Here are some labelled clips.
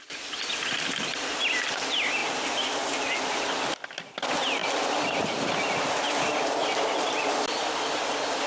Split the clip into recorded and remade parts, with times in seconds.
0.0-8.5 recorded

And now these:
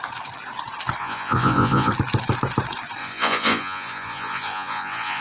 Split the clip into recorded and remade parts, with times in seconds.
0.0-1.0 recorded; 1.0-1.9 remade; 1.9-3.0 recorded; 3.0-5.2 remade